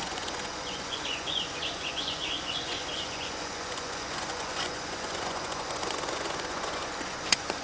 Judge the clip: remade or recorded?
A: remade